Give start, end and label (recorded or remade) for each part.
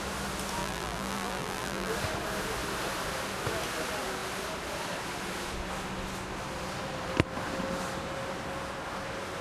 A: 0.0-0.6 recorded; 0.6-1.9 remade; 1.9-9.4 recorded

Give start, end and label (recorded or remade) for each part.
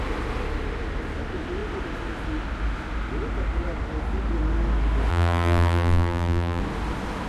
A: 0.0-5.1 recorded; 5.1-6.6 remade; 6.6-7.3 recorded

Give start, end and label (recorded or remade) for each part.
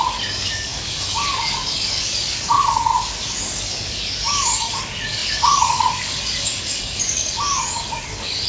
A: 0.0-2.9 remade; 2.9-3.4 recorded; 3.4-8.5 remade